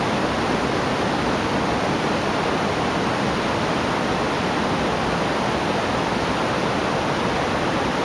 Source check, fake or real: real